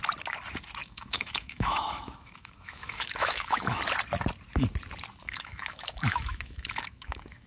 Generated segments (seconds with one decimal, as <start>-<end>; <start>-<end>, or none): 0.8-3.8; 5.2-7.5